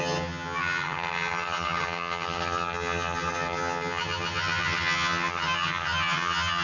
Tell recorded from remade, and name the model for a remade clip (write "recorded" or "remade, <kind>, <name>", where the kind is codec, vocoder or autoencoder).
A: remade, vocoder, HiFi-GAN